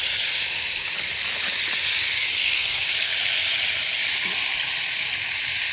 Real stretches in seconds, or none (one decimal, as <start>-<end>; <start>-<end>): 0.0-1.8; 3.2-5.7